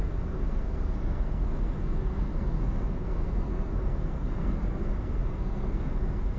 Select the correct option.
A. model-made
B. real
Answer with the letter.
A